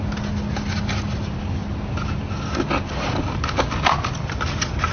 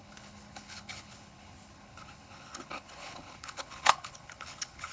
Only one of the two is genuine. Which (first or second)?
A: first